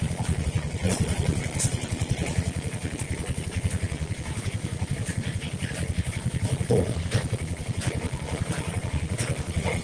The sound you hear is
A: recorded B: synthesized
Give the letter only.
B